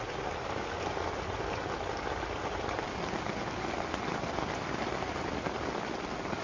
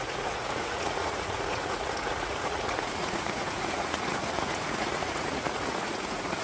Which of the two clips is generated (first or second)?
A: second